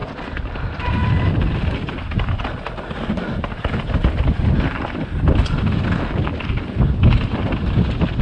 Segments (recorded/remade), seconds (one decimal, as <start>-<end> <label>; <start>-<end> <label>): 0.0-8.2 recorded